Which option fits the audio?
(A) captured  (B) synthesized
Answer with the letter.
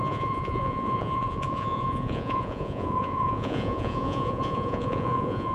B